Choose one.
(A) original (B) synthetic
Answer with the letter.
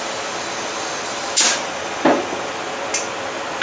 A